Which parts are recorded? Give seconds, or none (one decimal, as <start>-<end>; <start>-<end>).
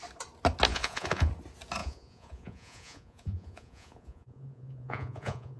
0.0-0.7; 1.3-1.8